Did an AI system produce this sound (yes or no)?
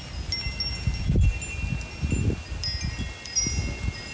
no